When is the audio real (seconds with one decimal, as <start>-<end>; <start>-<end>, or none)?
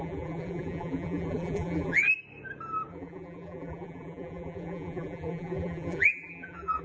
2.0-2.9